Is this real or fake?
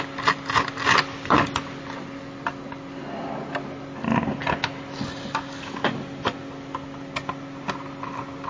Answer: real